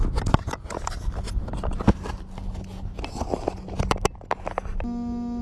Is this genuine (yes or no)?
yes